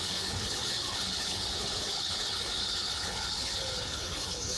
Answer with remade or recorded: remade